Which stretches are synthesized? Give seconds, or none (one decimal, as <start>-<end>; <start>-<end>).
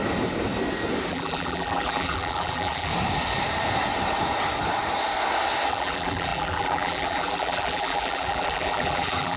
1.1-2.9; 5.7-9.4